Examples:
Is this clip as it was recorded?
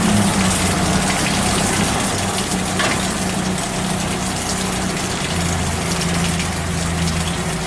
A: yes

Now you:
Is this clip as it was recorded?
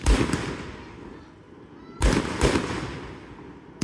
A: yes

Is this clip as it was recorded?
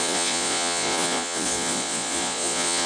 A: no